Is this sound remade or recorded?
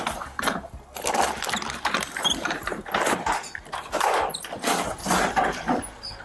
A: recorded